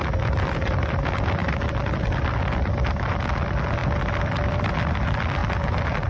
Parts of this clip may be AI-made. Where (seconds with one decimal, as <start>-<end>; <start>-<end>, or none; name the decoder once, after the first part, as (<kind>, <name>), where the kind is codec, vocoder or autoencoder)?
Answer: 1.4-3.2 (vocoder, BigVGAN v2); 3.8-4.6